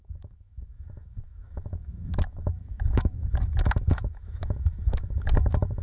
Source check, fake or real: fake